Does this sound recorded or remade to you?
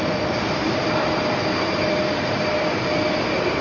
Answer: remade